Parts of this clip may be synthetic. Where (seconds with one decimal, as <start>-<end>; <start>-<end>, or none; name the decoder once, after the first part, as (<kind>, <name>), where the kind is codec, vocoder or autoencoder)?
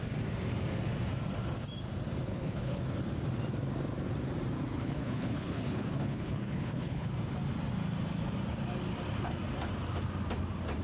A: 2.3-2.8 (codec, HILCodec); 4.7-7.1